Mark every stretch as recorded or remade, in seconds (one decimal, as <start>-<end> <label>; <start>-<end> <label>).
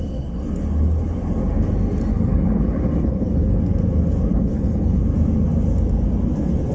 0.0-2.1 recorded; 2.1-3.6 remade; 3.6-4.3 recorded; 4.3-5.0 remade; 5.0-6.7 recorded